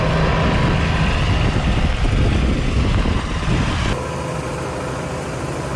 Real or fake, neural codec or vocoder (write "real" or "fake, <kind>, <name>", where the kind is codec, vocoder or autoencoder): real